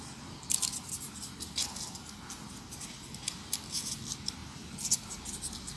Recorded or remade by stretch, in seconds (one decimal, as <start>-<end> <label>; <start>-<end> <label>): 0.0-5.8 recorded